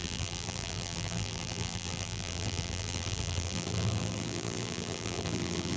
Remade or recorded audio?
remade